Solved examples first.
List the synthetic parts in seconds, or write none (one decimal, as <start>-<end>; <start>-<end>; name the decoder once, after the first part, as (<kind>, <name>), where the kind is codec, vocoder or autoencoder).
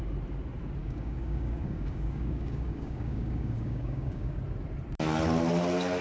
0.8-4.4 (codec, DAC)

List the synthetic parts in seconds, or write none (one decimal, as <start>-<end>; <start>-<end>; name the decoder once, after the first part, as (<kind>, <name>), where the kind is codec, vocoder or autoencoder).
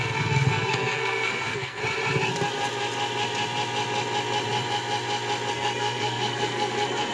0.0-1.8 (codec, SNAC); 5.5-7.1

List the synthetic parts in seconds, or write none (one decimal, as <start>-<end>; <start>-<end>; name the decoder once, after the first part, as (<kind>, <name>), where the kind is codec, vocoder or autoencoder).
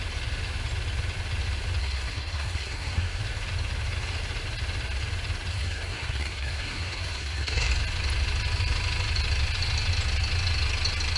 1.8-3.2 (codec, SNAC); 5.5-7.7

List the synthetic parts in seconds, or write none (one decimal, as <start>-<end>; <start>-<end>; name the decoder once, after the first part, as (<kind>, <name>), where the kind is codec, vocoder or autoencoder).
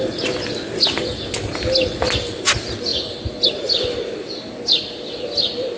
none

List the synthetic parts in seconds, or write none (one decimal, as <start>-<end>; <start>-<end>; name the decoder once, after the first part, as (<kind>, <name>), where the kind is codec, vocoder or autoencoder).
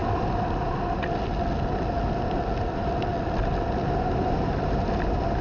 none